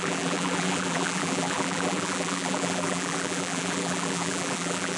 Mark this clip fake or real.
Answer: fake